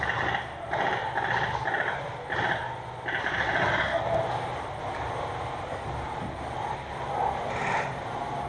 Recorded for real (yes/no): yes